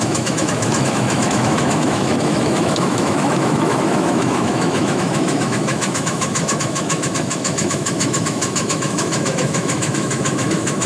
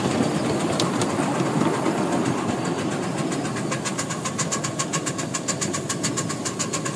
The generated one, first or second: first